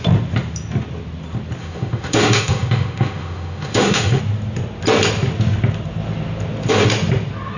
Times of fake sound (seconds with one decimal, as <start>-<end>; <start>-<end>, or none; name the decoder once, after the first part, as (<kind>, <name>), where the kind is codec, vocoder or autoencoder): 1.6-4.2 (autoencoder, DAC-VAE)

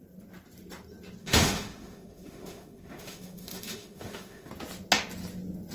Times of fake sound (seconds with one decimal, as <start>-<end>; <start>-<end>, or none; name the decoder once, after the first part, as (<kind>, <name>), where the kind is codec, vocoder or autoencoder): 1.2-4.5 (autoencoder, DAC-VAE)

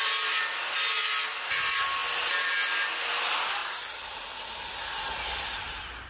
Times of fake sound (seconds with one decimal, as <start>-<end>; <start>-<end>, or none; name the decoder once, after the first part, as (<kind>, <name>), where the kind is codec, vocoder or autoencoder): none

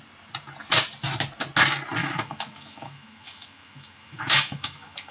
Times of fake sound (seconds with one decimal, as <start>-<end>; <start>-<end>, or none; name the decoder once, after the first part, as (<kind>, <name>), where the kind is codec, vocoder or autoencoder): 2.0-5.1 (autoencoder, DAC-VAE)

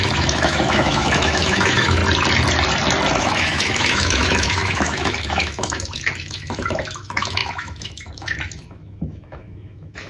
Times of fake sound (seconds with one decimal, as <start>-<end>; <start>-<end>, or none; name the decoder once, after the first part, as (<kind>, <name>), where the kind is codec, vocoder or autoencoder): 0.0-2.0 (autoencoder, DAC-VAE); 3.2-10.1

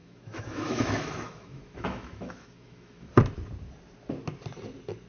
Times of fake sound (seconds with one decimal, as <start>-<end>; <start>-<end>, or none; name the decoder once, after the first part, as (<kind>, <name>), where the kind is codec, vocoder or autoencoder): 0.0-3.1 (autoencoder, DAC-VAE)